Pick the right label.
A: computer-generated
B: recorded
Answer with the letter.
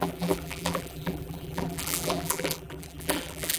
A